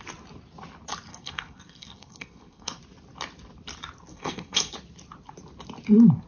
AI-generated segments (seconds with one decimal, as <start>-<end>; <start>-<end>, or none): 1.1-2.8; 4.1-4.7